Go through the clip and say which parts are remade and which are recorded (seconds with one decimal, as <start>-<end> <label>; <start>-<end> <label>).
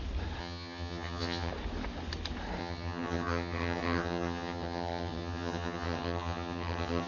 0.0-0.4 recorded; 0.4-1.5 remade; 1.5-2.6 recorded; 2.6-7.1 remade